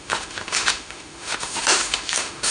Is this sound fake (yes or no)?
yes